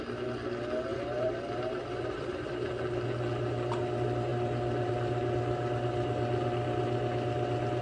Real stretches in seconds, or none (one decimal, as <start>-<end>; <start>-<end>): 0.0-0.9; 2.7-7.8